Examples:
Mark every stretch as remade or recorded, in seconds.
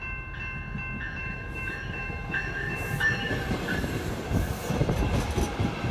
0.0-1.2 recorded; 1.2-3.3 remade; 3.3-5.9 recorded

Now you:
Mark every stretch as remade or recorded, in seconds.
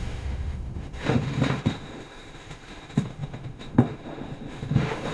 0.0-5.1 remade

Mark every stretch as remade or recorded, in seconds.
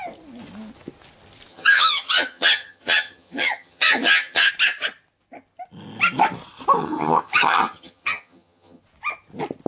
0.0-1.5 recorded; 1.5-4.5 remade; 4.5-6.8 recorded; 6.8-8.8 remade; 8.8-9.7 recorded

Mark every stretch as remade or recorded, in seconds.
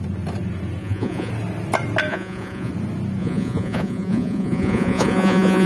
0.0-0.8 recorded; 0.8-1.3 remade; 1.3-2.1 recorded; 2.1-2.7 remade; 2.7-3.2 recorded; 3.2-5.7 remade